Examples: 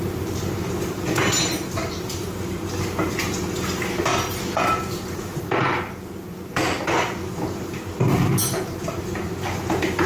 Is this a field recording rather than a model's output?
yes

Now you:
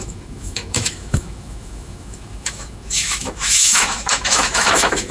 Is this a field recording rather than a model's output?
no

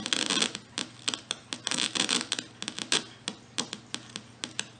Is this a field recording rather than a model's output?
yes